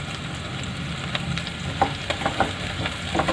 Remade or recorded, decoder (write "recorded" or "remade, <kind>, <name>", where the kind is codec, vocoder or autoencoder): recorded